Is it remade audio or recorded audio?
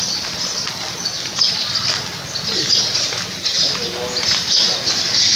recorded